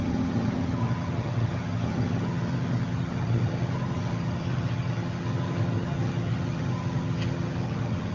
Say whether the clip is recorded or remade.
remade